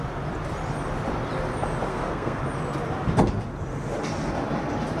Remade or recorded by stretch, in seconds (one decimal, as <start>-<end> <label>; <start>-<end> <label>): 0.0-1.9 recorded; 1.9-2.4 remade; 2.4-5.0 recorded